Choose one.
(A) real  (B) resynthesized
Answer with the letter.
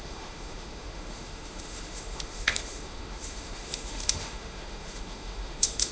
B